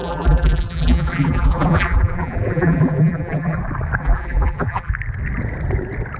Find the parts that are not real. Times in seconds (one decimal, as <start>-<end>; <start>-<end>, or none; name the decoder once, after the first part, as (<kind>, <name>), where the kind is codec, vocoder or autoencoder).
0.0-3.6 (vocoder, BigVGAN v2); 4.0-4.9